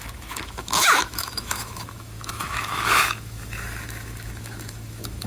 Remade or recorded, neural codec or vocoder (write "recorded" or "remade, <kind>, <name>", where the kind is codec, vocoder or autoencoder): remade, autoencoder, DAC-VAE